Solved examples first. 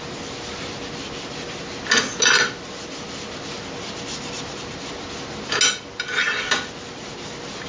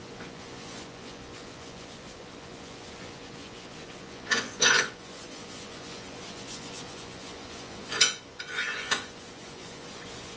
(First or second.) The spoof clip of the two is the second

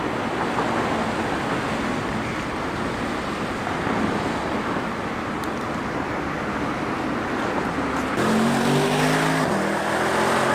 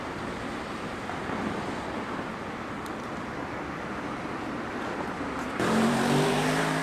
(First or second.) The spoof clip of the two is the second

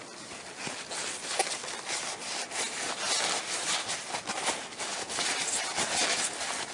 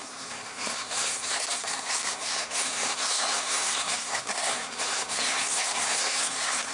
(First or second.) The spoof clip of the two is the second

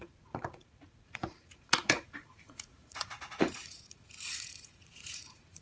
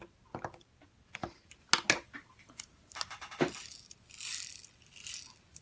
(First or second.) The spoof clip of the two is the first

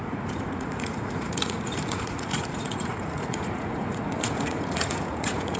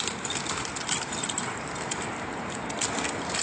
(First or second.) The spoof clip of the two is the first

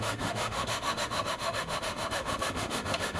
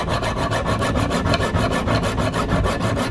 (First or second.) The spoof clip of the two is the first